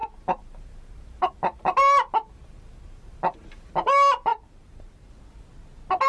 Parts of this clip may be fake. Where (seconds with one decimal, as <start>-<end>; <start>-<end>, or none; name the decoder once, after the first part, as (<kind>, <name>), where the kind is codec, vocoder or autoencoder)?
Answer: 0.0-3.7 (vocoder, BigVGAN v2); 4.3-5.1